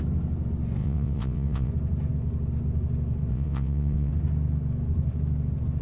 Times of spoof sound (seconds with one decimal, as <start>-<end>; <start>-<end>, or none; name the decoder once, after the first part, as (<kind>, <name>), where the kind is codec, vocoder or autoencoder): 0.8-1.7 (vocoder, WaveNeXt); 3.3-4.1